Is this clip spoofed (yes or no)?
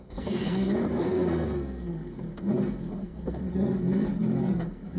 yes